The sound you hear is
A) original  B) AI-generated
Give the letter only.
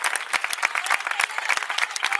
A